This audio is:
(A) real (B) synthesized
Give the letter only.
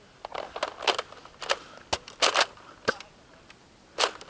A